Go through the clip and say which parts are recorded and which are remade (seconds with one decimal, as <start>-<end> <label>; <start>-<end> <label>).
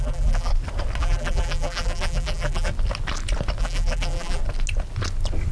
0.0-0.5 remade; 0.5-1.0 recorded; 1.0-2.7 remade; 2.7-3.6 recorded; 3.6-4.4 remade; 4.4-5.5 recorded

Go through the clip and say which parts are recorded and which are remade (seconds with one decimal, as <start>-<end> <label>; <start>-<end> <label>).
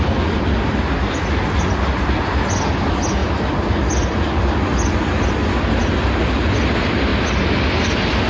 0.0-8.3 recorded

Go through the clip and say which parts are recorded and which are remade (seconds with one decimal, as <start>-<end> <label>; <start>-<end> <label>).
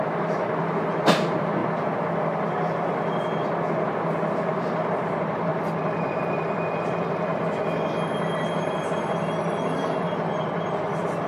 0.0-1.6 remade; 1.6-4.3 recorded; 4.3-7.3 remade; 7.3-8.7 recorded; 8.7-11.3 remade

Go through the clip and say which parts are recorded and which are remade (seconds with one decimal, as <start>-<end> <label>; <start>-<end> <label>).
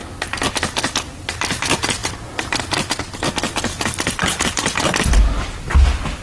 0.0-6.2 recorded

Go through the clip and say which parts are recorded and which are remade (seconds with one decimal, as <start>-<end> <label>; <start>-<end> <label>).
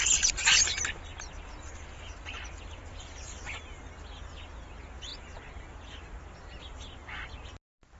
0.0-1.1 recorded; 1.1-3.2 remade; 3.2-8.0 recorded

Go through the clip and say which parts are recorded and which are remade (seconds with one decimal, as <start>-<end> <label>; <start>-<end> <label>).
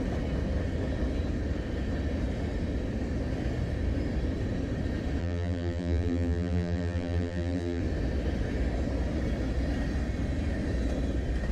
0.0-5.2 recorded; 5.2-7.8 remade; 7.8-11.5 recorded